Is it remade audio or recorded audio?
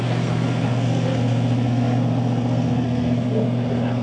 remade